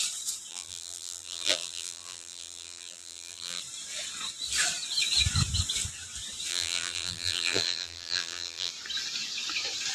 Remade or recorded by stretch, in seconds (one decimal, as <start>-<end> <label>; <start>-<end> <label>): 0.0-0.5 recorded; 0.5-3.6 remade; 3.6-6.5 recorded; 6.5-8.7 remade; 8.7-9.9 recorded